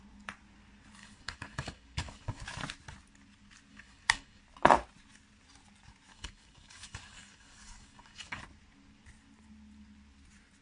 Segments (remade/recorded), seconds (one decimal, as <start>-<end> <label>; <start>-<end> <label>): 0.0-1.0 recorded; 1.0-2.4 remade; 2.4-3.7 recorded; 3.7-4.4 remade; 4.4-6.1 recorded; 6.1-8.4 remade; 8.4-10.6 recorded